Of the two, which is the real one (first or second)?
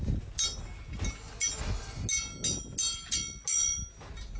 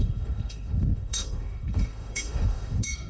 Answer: first